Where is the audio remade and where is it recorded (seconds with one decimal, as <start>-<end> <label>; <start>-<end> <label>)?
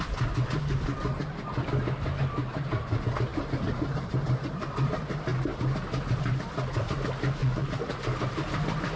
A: 0.0-7.4 recorded; 7.4-8.0 remade; 8.0-9.0 recorded